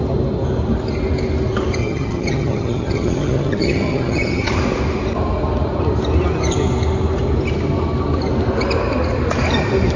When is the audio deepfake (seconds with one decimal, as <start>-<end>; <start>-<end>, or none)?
1.8-4.6